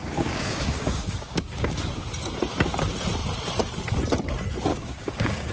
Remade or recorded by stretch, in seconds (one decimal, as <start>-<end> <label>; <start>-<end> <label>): 0.0-1.8 remade; 1.8-4.7 recorded; 4.7-5.5 remade